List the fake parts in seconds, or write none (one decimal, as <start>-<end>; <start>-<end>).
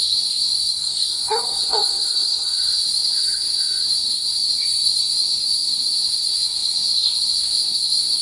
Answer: 0.0-8.2